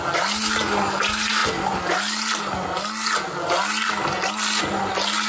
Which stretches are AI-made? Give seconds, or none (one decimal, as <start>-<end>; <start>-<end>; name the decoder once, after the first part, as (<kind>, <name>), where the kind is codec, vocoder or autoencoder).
none